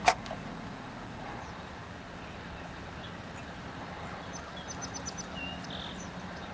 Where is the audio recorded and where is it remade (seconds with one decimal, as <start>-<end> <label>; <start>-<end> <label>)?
0.0-1.4 remade; 1.4-6.5 recorded